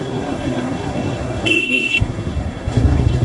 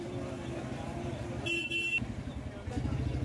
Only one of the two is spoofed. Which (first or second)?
first